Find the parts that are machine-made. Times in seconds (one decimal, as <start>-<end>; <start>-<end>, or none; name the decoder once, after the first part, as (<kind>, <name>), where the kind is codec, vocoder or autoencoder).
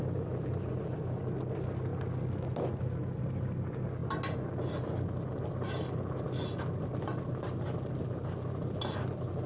none